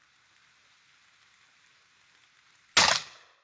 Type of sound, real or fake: real